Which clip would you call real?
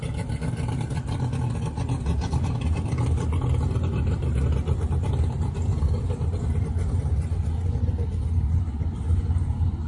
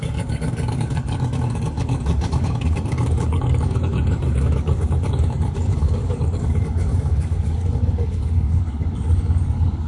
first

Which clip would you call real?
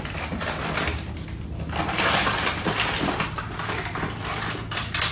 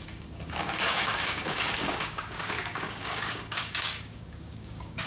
first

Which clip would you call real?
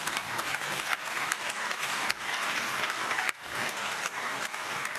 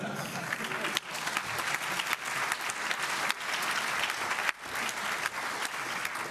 second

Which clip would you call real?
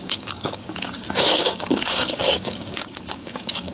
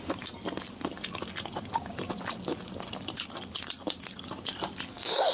second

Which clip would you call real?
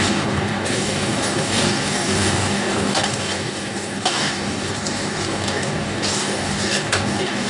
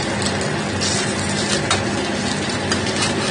second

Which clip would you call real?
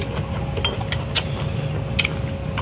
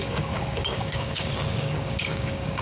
first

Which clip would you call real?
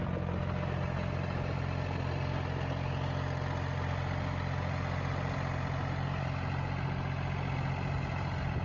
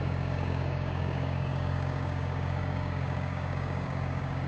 first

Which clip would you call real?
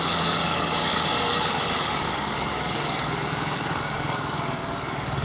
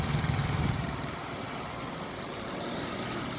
second